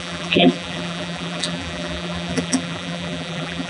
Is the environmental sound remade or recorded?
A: remade